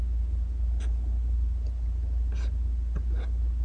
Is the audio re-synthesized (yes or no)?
no